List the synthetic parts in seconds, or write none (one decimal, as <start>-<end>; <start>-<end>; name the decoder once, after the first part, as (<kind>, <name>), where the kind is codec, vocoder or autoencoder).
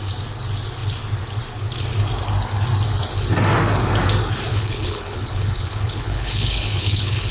4.5-7.3 (codec, HILCodec)